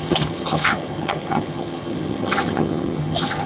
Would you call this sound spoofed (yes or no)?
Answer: yes